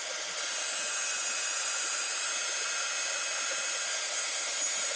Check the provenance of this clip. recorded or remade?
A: recorded